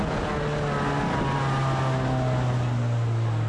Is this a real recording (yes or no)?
yes